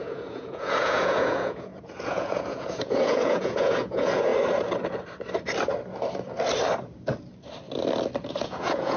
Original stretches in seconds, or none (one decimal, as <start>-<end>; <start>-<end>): 4.3-8.4